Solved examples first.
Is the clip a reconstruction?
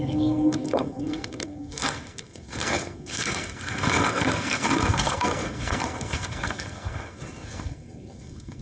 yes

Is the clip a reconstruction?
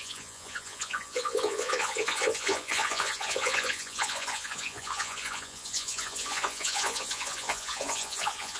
yes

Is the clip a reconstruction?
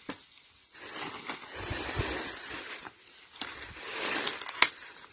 no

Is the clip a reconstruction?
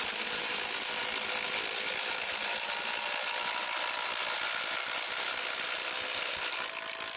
no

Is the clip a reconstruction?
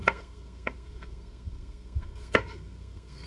yes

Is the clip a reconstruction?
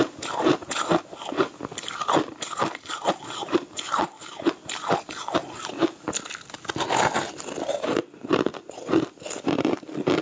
no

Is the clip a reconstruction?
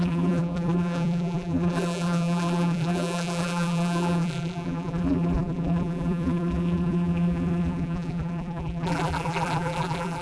yes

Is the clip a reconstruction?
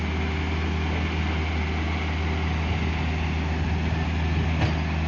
no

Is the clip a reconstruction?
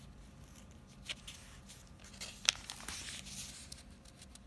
no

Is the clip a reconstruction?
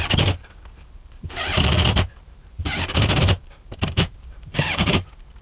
yes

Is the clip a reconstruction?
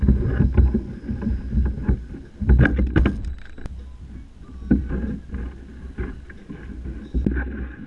no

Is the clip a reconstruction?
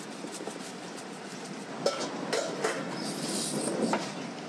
no